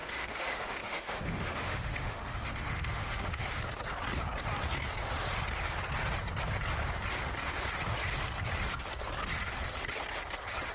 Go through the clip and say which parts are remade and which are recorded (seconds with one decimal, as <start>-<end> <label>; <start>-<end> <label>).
0.0-3.6 remade; 3.6-10.7 recorded